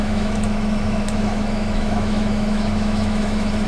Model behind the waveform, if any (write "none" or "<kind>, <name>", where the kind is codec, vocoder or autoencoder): autoencoder, DAC-VAE